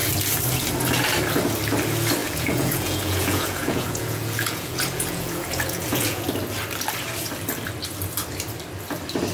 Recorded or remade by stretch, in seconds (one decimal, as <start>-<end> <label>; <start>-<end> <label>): 0.0-2.2 recorded; 2.2-6.3 remade; 6.3-9.3 recorded